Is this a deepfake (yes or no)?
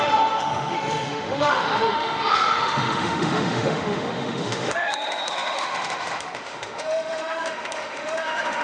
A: yes